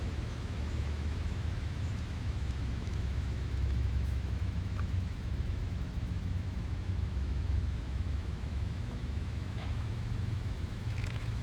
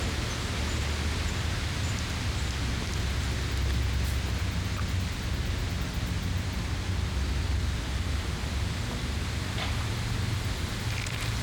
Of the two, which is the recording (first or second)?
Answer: second